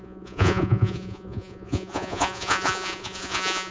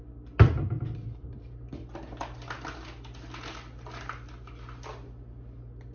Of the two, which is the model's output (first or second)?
first